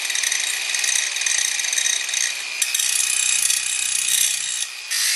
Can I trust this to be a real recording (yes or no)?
yes